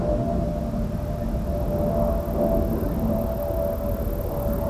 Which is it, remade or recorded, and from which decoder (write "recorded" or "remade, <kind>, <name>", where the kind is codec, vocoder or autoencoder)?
recorded